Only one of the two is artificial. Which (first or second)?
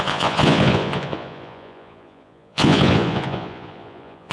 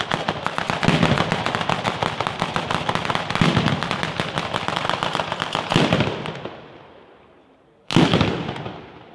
first